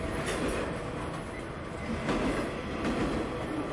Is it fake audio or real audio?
real